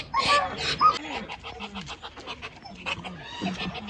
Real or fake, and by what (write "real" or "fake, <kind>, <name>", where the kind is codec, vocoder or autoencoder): real